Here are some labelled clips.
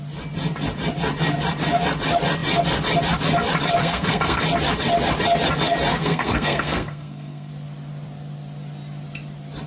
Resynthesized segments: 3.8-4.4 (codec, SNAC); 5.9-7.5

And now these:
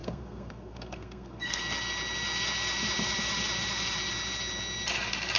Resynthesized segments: 0.0-1.6 (codec, SNAC)

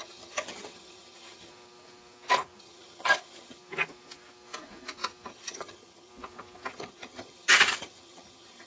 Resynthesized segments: 0.0-1.5 (vocoder, HiFi-GAN); 2.6-3.6; 5.3-6.1; 6.7-8.7

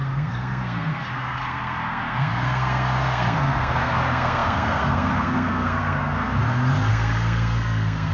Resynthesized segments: 0.0-6.4 (codec, SNAC); 6.9-8.1

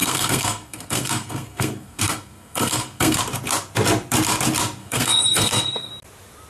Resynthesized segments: 0.0-3.2 (codec, SNAC); 4.8-5.9